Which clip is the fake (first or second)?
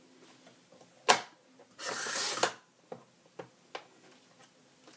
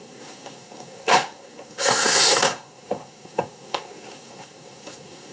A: second